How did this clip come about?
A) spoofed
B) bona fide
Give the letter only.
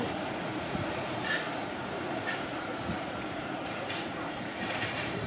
A